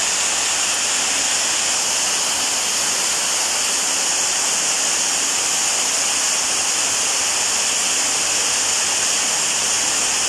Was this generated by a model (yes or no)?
no